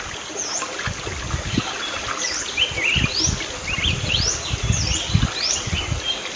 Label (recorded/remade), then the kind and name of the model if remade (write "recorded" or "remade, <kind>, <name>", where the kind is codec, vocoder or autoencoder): recorded